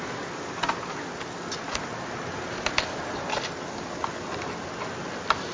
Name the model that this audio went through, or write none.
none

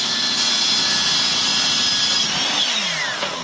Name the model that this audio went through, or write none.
none